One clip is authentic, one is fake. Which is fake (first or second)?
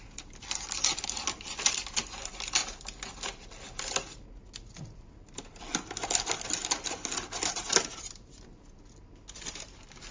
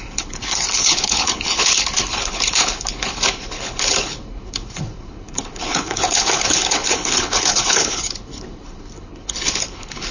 second